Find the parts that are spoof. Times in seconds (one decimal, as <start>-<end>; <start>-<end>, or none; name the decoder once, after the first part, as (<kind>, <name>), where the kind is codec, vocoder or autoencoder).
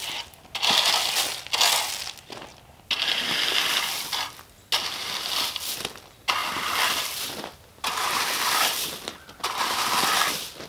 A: 6.4-10.1 (vocoder, BigVGAN v2)